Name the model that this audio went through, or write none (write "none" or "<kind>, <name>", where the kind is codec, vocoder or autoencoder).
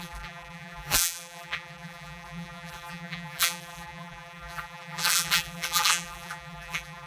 vocoder, BigVGAN v2